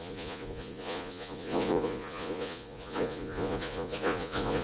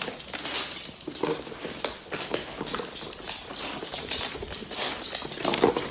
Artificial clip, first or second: first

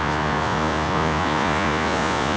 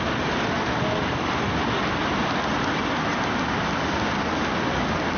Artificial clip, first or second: first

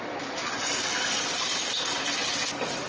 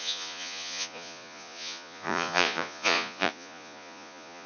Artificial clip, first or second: second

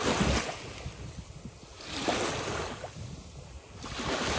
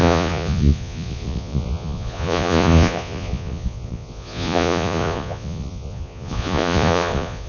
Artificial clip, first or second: second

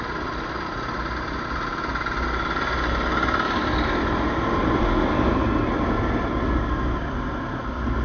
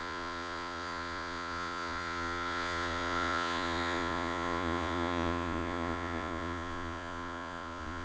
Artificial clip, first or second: second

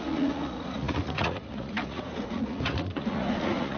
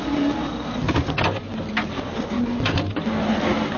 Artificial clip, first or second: first